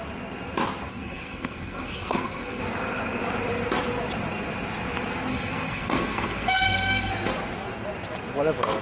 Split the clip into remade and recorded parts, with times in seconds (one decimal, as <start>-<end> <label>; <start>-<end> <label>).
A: 0.0-0.9 recorded; 0.9-2.6 remade; 2.6-5.3 recorded; 5.3-7.1 remade; 7.1-8.8 recorded